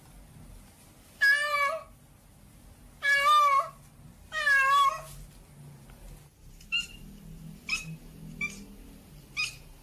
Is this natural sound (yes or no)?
yes